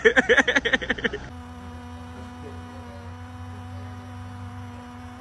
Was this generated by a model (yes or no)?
no